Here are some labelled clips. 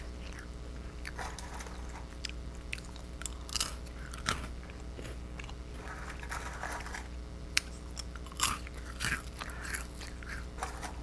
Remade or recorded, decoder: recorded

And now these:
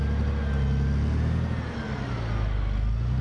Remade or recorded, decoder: recorded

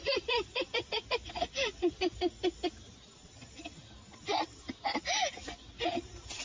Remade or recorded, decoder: recorded